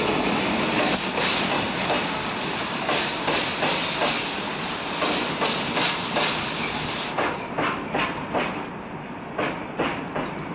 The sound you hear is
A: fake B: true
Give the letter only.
B